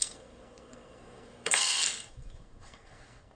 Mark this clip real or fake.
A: fake